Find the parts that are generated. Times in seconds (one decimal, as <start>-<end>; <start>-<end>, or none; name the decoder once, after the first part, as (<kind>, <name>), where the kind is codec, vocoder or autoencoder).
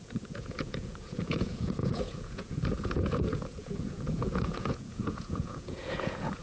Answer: 0.0-6.4 (vocoder, Vocos)